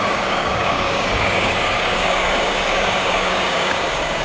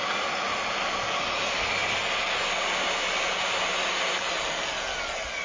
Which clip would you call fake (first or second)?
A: first